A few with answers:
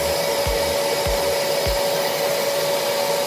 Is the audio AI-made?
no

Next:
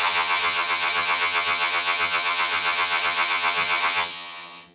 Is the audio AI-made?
yes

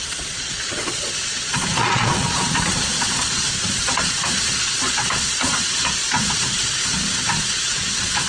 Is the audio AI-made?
yes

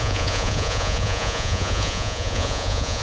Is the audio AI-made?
yes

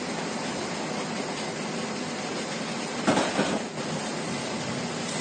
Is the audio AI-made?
no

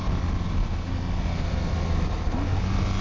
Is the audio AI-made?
no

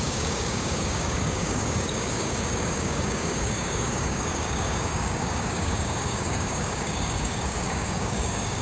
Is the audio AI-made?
yes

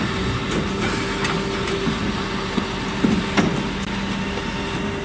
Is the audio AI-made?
no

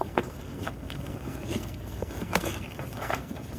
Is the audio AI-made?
yes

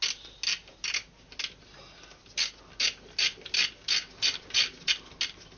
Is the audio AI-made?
no